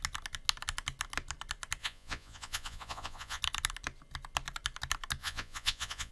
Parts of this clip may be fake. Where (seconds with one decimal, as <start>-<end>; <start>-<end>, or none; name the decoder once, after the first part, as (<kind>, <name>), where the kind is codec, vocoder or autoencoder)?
1.8-3.4 (vocoder, Vocos); 5.2-6.1